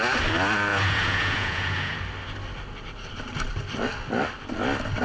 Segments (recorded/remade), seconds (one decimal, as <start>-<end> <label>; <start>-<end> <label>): 0.0-0.7 recorded; 0.7-2.0 remade; 2.0-5.0 recorded